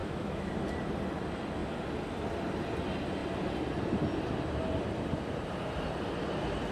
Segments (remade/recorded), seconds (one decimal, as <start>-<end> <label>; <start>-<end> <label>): 0.0-0.5 remade; 0.5-6.7 recorded